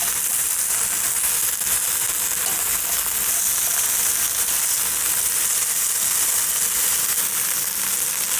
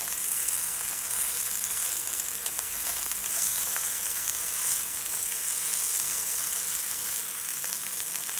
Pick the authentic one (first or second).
first